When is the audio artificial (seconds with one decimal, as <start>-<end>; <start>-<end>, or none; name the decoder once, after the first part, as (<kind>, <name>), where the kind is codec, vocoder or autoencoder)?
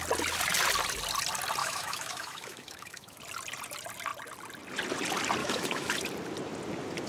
1.6-3.2 (autoencoder, DAC-VAE); 5.4-5.9